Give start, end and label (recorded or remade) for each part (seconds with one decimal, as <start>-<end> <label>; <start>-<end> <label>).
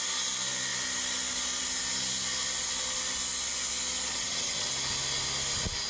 0.0-4.1 recorded; 4.1-4.7 remade; 4.7-5.9 recorded